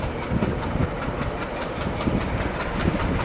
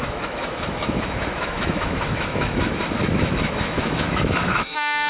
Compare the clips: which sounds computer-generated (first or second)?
second